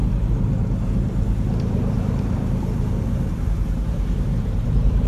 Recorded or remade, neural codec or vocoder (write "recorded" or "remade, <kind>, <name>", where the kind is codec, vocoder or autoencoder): remade, vocoder, BigVGAN v2